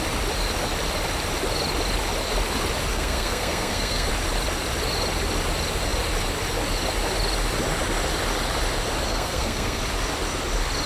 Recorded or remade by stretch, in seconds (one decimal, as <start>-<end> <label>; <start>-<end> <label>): 0.0-2.9 recorded; 2.9-4.1 remade; 4.1-9.1 recorded; 9.1-9.8 remade; 9.8-10.9 recorded